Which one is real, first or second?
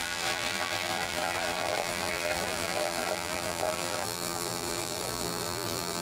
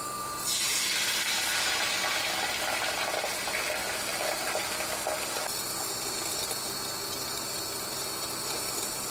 second